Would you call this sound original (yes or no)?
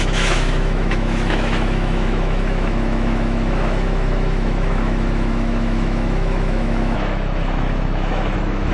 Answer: no